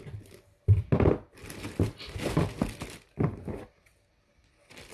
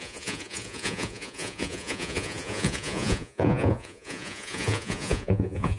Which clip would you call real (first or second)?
first